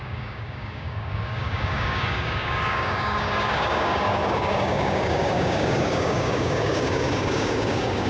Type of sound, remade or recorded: remade